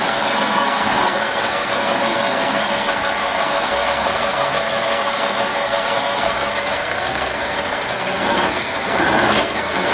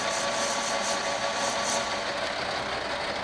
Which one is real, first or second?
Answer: second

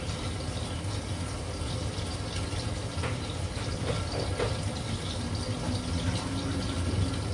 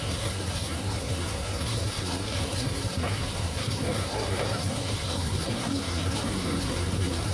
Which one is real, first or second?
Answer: first